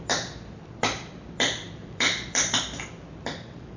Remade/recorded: remade